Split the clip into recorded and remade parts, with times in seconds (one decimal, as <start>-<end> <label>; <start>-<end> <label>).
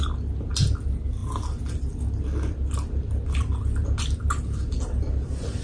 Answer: 0.0-5.6 recorded